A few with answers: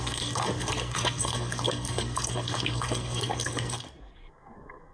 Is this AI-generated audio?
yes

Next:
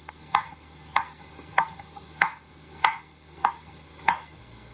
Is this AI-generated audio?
yes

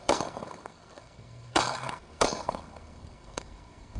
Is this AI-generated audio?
yes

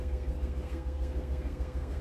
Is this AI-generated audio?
yes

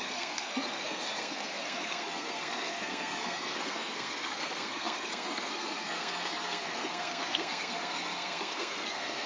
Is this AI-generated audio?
yes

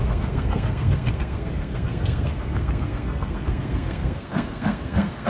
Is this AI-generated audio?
yes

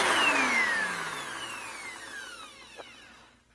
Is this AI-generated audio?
no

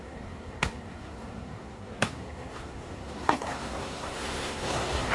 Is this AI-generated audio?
yes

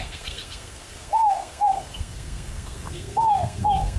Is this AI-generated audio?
yes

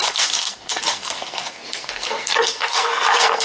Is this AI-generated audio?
yes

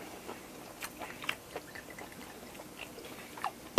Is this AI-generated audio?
no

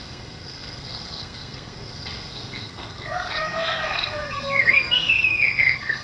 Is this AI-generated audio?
yes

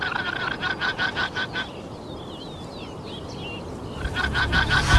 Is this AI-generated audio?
no